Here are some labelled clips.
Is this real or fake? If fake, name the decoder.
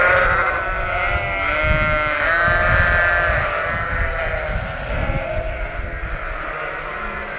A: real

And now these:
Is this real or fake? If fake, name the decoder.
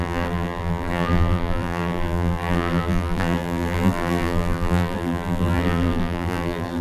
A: fake, vocoder, BigVGAN v2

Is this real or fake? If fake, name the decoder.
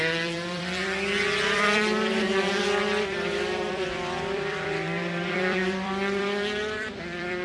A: fake, vocoder, BigVGAN v2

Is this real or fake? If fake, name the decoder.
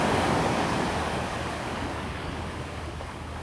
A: fake, codec, DAC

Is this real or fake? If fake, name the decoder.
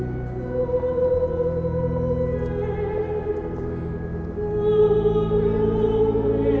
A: real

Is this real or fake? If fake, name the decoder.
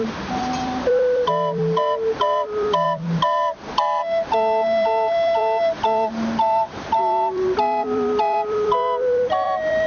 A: fake, vocoder, BigVGAN v2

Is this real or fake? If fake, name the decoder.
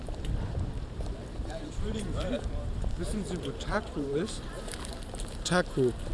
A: fake, vocoder, BigVGAN v2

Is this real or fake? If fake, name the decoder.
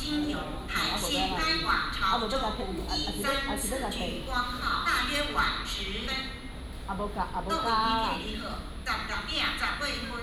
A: real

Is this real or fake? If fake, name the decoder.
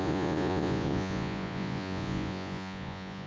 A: fake, vocoder, Vocos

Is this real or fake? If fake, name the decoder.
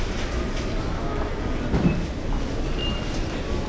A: real